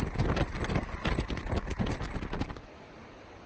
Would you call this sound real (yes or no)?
yes